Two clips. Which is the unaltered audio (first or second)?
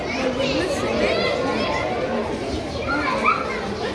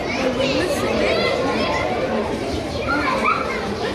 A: first